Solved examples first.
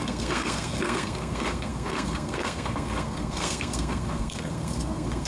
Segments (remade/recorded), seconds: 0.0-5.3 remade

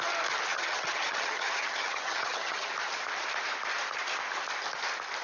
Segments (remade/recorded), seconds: 0.0-0.5 recorded; 0.5-2.7 remade; 2.7-5.2 recorded

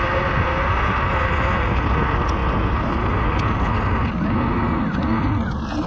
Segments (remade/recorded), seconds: 0.0-5.9 recorded